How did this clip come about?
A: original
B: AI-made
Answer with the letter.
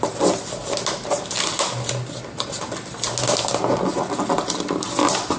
A